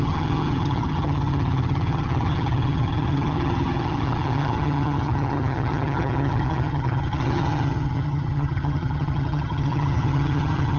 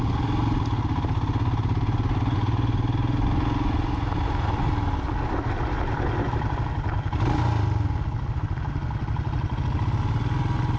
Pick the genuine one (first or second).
second